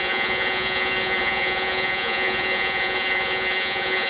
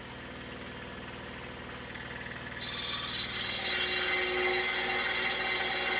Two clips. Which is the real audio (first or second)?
second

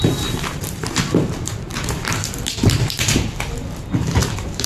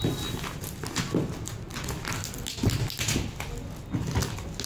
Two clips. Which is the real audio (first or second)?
second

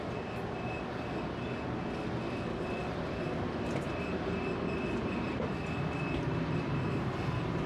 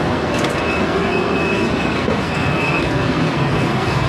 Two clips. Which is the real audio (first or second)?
first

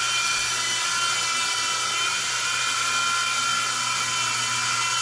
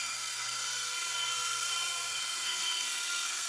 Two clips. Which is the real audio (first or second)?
first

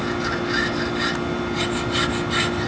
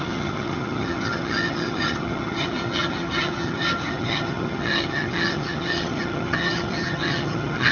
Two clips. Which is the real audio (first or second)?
first